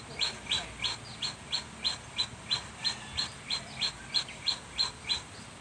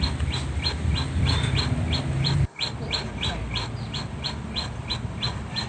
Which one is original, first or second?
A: first